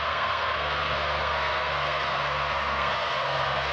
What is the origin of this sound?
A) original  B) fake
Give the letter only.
B